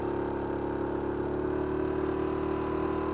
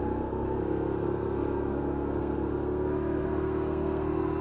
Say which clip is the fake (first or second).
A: second